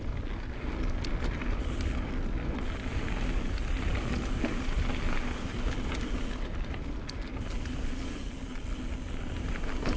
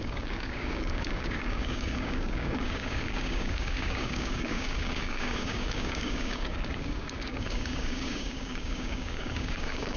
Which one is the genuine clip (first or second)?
first